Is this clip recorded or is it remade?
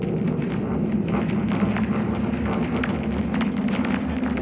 recorded